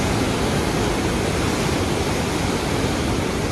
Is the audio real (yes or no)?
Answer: yes